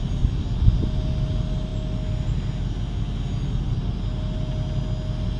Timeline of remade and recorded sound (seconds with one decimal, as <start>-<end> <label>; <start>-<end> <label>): 0.0-5.4 recorded